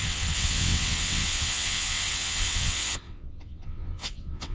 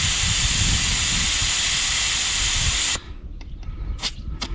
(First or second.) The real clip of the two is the second